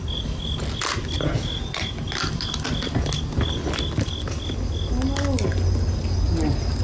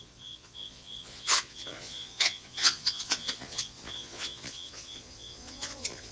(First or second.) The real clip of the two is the first